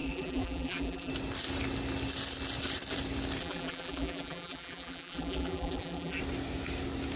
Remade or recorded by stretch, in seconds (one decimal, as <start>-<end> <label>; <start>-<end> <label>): 0.0-1.1 remade; 1.1-3.4 recorded; 3.4-6.2 remade; 6.2-7.2 recorded